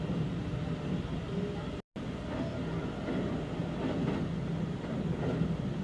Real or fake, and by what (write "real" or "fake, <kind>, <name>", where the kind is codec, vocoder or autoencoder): real